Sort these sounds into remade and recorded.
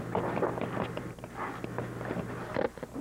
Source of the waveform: remade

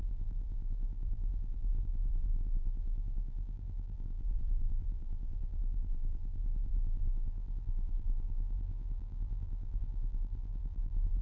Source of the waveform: remade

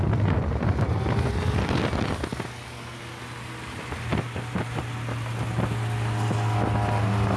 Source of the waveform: recorded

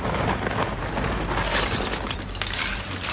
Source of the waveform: recorded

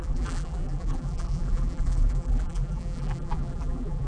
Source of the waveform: remade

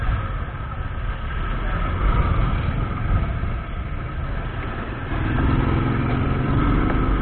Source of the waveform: recorded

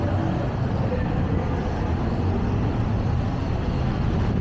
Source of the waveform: recorded